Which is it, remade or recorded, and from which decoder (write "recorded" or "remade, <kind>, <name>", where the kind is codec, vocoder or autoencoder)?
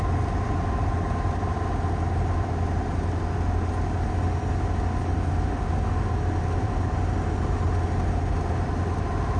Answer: recorded